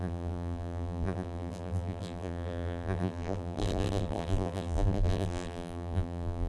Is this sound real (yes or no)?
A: no